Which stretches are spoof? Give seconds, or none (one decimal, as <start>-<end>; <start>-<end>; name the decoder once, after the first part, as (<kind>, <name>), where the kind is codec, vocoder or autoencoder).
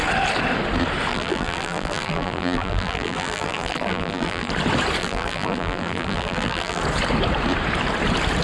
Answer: 1.1-4.5 (vocoder, BigVGAN v2); 5.0-6.8